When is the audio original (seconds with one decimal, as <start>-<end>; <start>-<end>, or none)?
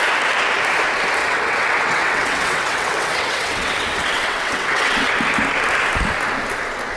0.0-1.2; 5.1-7.0